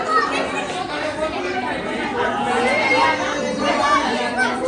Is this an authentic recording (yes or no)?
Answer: yes